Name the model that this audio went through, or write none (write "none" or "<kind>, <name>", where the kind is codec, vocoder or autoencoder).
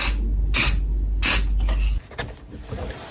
none